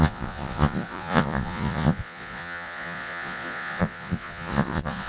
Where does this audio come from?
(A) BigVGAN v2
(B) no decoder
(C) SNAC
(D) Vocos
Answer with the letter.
D